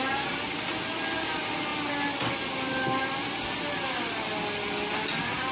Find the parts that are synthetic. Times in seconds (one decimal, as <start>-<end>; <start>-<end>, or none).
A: none